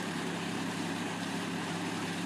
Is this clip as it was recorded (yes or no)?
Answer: no